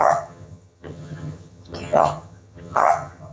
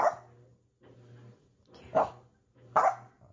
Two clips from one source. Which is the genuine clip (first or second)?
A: second